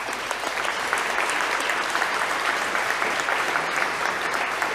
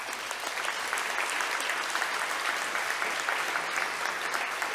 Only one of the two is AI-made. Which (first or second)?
first